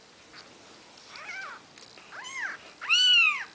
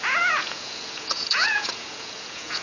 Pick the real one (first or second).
first